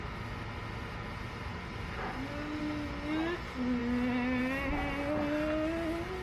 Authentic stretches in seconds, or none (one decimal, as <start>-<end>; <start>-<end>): 0.0-6.2